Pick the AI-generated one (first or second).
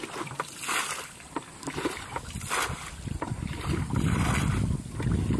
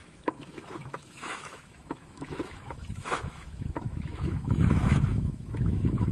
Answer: second